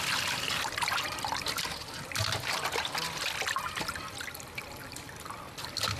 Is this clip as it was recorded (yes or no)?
yes